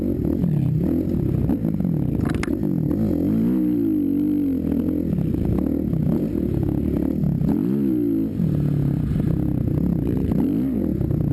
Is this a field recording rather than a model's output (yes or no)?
yes